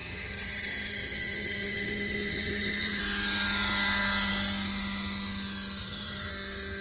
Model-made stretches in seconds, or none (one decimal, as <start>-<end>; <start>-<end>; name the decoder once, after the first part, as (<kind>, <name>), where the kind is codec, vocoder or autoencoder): 0.0-3.0 (vocoder, HiFi-GAN); 5.8-6.3

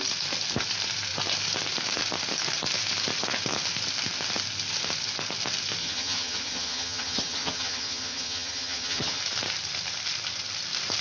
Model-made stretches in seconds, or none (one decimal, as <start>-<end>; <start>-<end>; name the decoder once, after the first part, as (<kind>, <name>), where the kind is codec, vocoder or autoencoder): 5.8-9.2 (vocoder, HiFi-GAN)

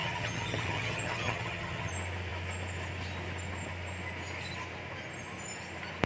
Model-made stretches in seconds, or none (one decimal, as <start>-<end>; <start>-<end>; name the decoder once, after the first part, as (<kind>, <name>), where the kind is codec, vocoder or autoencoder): 0.0-1.9 (vocoder, HiFi-GAN)

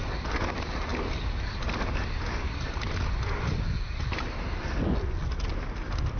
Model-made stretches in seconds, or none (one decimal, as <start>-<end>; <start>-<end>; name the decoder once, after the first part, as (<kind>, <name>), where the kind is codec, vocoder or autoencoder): none

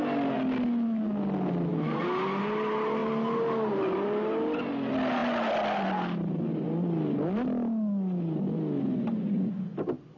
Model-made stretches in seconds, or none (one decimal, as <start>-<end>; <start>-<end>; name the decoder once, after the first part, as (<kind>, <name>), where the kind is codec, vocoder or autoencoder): none

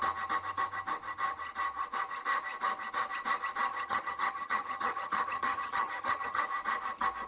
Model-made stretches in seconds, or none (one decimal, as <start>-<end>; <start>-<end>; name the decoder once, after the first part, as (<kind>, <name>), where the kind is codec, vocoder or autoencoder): 3.7-6.4 (vocoder, HiFi-GAN)